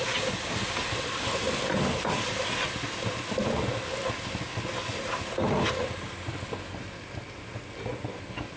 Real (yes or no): yes